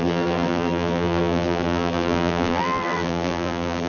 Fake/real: fake